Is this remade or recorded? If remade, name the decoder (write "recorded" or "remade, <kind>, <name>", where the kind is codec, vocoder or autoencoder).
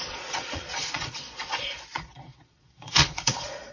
remade, vocoder, Vocos